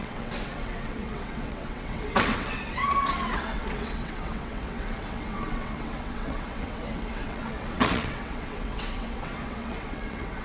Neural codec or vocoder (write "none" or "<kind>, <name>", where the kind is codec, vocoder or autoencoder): vocoder, WaveNeXt